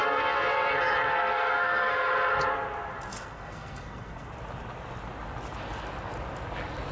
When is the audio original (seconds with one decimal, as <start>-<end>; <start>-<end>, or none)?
0.7-1.1; 2.1-3.1; 4.3-6.9